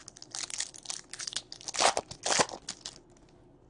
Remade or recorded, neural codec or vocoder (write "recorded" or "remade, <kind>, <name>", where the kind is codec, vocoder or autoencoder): recorded